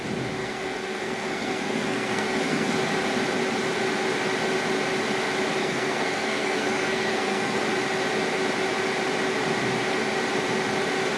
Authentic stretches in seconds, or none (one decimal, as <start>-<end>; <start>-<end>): 0.0-0.4; 2.7-5.6; 7.6-11.2

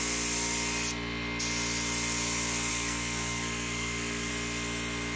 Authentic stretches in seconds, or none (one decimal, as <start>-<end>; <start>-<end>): 0.0-2.7; 4.3-5.2

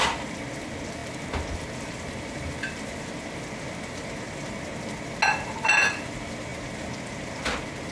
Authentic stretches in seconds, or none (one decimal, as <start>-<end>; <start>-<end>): 0.0-7.9

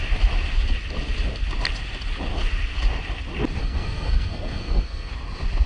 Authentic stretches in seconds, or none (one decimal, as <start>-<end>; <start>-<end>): 0.0-3.6; 5.1-5.7

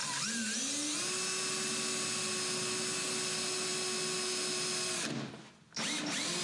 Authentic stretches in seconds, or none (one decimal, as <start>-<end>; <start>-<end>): 0.0-6.4

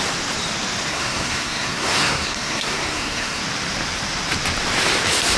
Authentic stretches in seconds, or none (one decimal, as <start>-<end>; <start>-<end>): 0.0-0.9; 3.4-5.4

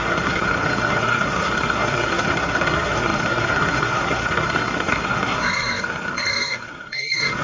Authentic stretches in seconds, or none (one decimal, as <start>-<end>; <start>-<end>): none

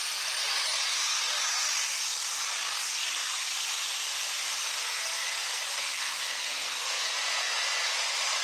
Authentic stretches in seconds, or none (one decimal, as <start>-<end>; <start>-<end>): 0.0-4.8; 7.1-8.4